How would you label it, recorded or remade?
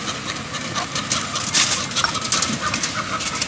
recorded